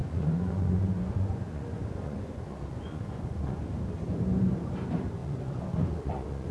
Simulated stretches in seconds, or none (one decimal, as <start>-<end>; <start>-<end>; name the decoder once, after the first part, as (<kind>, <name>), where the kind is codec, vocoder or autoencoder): 0.0-3.7 (vocoder, Vocos); 5.2-6.5